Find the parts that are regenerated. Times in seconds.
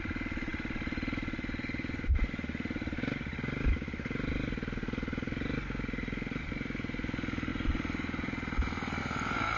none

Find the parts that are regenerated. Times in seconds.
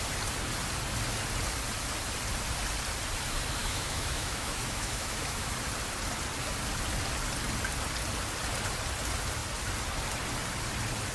3.6-5.5 (autoencoder, DAC-VAE)